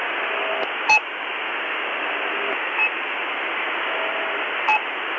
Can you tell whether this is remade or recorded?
recorded